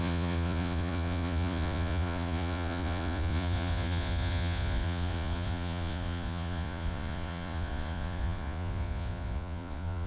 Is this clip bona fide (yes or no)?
no